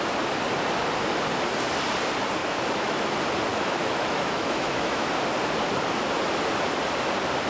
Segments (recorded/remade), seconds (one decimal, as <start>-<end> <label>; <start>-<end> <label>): 0.0-2.4 recorded; 2.4-3.0 remade; 3.0-3.5 recorded; 3.5-5.1 remade; 5.1-7.5 recorded